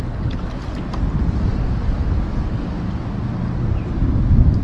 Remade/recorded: recorded